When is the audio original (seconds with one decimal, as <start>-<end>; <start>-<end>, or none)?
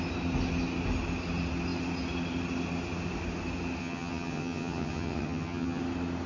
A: 0.0-3.8; 5.8-6.3